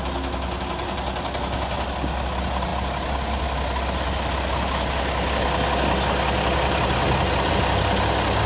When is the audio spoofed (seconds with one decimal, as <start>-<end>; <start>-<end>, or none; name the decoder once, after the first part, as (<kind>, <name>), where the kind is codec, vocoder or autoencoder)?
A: none